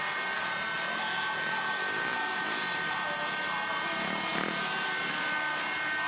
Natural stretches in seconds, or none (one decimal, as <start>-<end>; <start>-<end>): 0.0-6.1